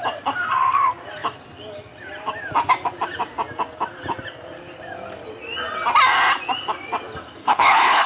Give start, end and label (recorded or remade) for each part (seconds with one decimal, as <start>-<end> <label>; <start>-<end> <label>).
0.0-7.4 recorded; 7.4-8.1 remade